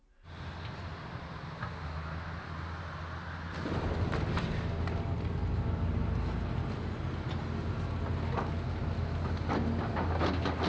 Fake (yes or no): no